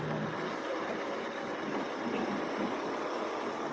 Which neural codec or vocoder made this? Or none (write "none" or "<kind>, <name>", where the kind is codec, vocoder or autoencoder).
none